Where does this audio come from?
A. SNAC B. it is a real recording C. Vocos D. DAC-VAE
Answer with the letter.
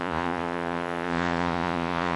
C